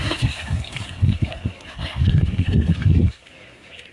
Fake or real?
fake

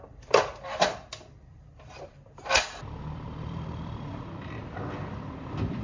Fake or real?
fake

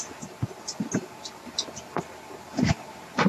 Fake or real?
real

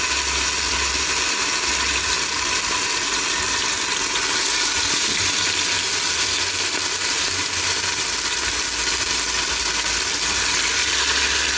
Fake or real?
real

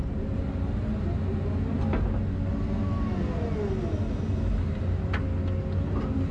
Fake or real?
real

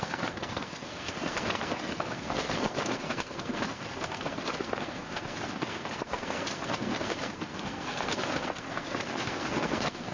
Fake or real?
fake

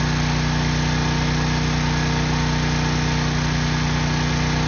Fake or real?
real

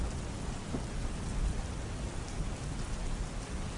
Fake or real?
real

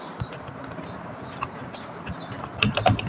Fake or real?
real